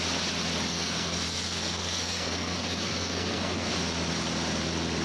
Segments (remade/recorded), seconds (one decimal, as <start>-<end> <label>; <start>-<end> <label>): 0.0-0.7 recorded; 0.7-3.7 remade; 3.7-5.0 recorded

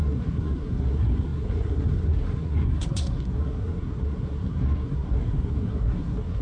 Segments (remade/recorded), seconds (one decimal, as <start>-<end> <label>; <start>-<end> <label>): 0.0-6.4 remade

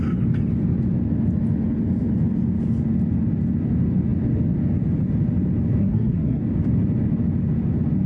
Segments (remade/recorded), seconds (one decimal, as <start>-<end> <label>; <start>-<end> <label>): 0.0-5.8 recorded; 5.8-6.4 remade; 6.4-8.1 recorded

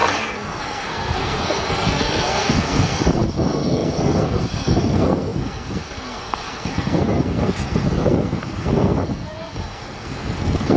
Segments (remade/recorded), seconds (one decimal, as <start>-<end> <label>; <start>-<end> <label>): 0.0-10.8 remade

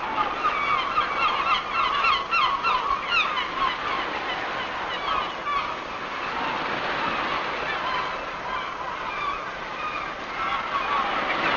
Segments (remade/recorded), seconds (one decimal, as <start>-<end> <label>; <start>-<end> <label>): 0.0-11.6 recorded

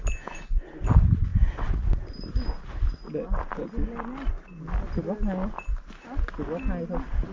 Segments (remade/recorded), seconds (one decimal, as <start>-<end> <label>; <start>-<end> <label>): 0.0-7.3 recorded

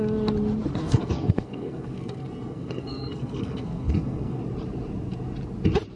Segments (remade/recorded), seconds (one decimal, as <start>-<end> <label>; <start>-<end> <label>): 0.0-0.8 recorded; 0.8-4.4 remade; 4.4-6.0 recorded

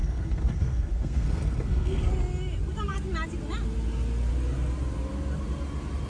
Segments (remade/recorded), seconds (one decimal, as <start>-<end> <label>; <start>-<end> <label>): 0.0-2.1 remade; 2.1-6.1 recorded